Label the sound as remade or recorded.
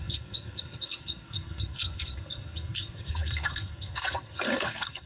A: remade